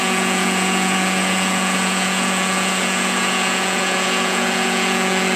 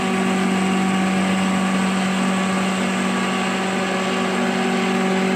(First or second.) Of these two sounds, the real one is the second